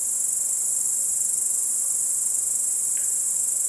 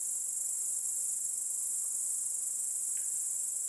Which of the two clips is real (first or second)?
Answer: second